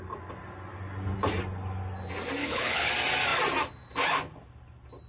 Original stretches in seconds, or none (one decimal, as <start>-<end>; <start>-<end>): 0.0-2.4; 2.9-5.1